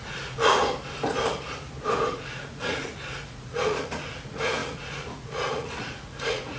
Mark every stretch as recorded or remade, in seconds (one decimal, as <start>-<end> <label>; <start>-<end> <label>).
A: 0.0-0.6 remade; 0.6-2.1 recorded; 2.1-6.6 remade